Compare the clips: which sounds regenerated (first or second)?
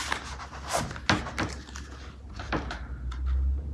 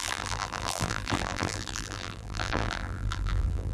second